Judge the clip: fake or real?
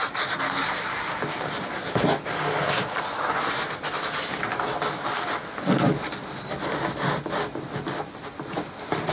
real